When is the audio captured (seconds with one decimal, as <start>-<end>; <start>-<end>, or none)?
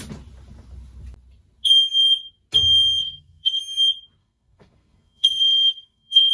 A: 0.0-3.0; 3.6-4.2